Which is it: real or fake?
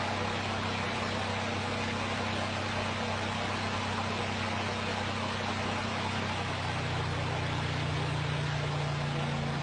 real